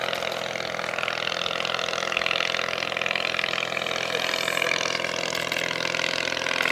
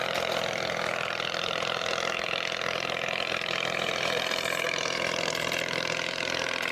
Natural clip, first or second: first